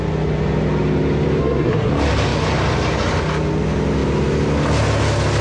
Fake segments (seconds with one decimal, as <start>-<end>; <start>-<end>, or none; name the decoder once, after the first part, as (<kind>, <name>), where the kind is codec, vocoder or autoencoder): 1.4-1.9 (codec, SNAC)